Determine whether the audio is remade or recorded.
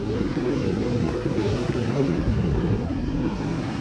remade